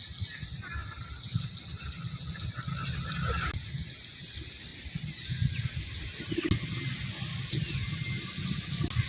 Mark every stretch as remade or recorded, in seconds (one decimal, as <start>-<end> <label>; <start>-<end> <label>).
0.0-9.1 recorded